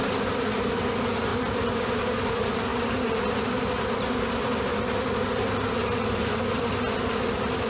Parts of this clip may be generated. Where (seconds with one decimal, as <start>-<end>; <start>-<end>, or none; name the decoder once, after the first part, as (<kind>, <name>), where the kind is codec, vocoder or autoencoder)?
1.3-1.9 (vocoder, BigVGAN v2); 2.7-3.2; 5.8-6.7